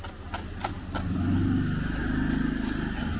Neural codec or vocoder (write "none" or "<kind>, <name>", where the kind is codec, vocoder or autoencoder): none